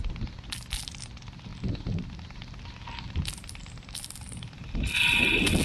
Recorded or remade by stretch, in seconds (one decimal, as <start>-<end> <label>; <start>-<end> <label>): 0.0-5.6 recorded